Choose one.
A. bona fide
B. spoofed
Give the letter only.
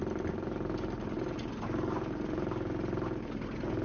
A